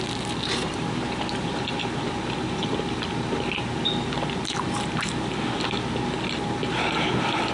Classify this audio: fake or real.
real